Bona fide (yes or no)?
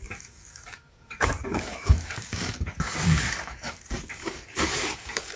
no